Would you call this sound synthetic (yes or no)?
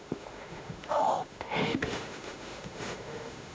yes